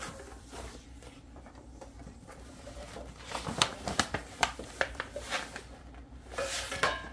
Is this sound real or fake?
fake